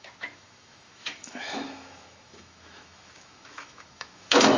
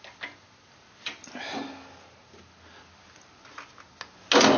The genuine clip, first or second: second